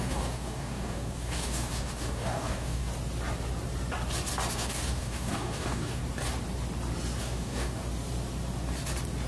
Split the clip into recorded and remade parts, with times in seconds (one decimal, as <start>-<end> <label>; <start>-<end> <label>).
0.0-2.9 remade; 2.9-4.5 recorded; 4.5-6.0 remade; 6.0-7.2 recorded; 7.2-7.8 remade; 7.8-9.3 recorded